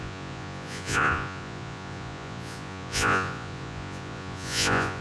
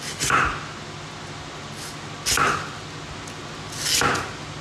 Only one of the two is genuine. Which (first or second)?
second